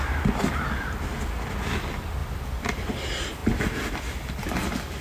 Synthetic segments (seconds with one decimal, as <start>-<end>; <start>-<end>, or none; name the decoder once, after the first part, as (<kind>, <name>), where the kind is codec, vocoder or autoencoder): none